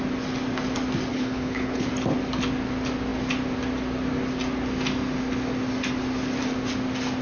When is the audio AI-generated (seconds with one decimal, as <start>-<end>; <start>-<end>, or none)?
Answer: 1.1-1.9